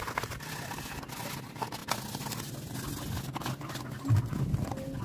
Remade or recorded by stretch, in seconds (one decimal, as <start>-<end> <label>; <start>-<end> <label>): 0.0-5.0 recorded